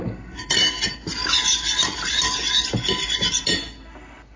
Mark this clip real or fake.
real